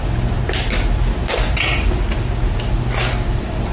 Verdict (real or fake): real